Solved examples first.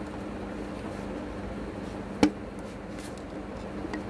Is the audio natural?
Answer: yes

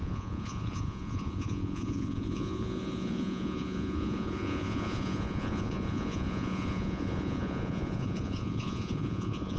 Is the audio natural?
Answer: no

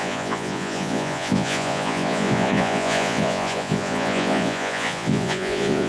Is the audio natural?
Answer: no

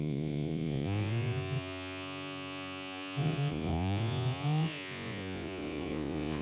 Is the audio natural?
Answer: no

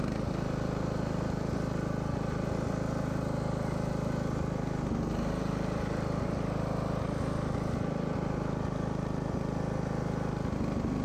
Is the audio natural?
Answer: yes